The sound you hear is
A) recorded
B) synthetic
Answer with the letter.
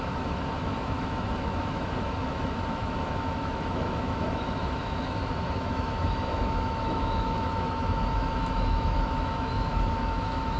B